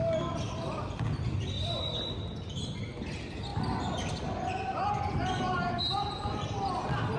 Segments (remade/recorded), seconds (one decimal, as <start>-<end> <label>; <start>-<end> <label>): 0.0-7.2 recorded